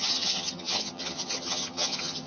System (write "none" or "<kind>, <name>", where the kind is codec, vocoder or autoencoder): vocoder, HiFi-GAN